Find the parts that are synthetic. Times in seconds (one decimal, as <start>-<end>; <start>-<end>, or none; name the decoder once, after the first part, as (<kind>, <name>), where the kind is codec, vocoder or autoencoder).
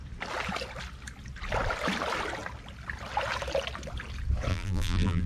4.5-5.3 (vocoder, BigVGAN v2)